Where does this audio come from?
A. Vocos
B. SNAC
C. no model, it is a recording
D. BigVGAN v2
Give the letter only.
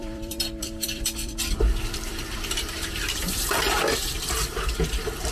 D